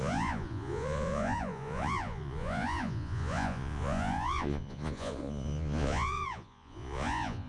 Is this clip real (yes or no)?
no